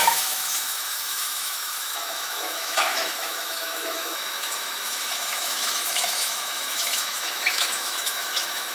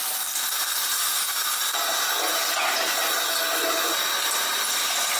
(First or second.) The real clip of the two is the second